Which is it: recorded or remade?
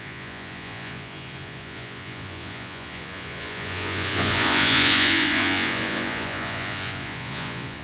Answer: remade